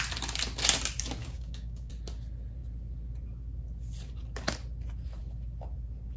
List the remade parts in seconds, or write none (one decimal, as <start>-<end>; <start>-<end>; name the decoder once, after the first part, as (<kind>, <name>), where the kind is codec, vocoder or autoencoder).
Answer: 1.2-1.9 (codec, DAC)